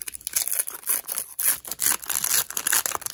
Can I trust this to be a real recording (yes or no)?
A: yes